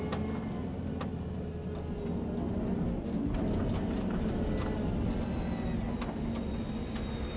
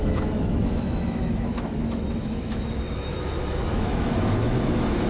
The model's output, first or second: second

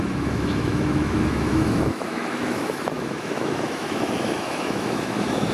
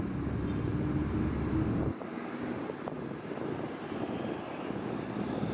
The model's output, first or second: first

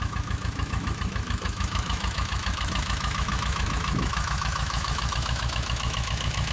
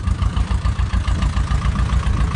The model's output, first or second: first